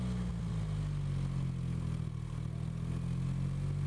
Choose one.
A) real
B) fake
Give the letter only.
A